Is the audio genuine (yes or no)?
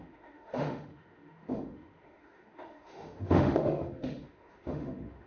no